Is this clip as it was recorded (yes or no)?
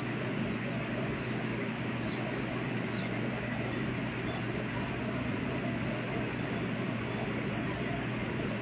no